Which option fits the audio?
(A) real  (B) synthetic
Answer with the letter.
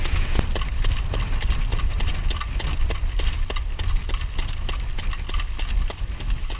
A